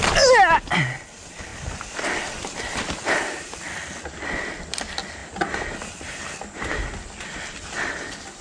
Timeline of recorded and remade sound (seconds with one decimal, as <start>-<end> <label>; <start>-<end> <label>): 0.0-8.4 recorded